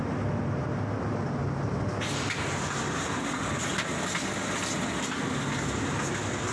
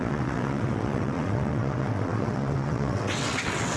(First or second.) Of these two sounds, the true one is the first